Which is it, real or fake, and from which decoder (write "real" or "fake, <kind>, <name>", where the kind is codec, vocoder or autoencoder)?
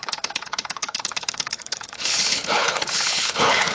fake, codec, HILCodec